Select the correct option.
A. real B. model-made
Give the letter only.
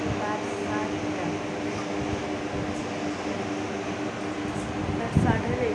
A